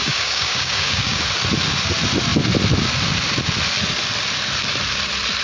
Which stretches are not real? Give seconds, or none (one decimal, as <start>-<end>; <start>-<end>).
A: 0.0-1.2